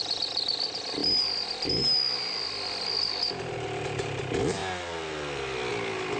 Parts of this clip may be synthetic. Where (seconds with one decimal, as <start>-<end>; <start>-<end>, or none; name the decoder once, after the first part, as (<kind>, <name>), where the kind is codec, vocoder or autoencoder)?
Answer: none